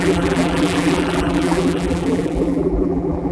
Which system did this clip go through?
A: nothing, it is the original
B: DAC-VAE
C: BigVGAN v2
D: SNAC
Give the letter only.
C